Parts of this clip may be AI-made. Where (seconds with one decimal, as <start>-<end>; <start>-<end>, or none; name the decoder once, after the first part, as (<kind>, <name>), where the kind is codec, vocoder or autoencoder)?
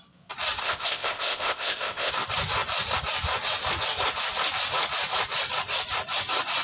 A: 0.6-2.1 (codec, ZipCodec)